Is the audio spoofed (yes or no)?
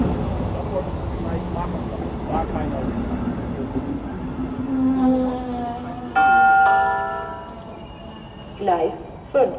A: no